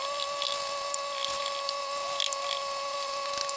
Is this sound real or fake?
real